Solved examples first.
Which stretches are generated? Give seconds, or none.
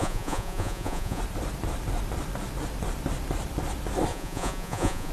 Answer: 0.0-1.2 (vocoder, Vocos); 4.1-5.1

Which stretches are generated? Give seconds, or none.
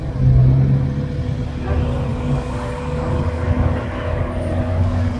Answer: 2.1-5.2 (codec, DAC)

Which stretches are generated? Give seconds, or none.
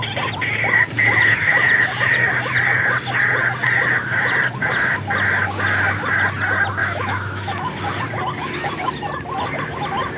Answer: 6.8-7.7 (autoencoder, DAC-VAE)